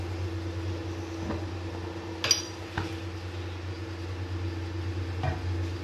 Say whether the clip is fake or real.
real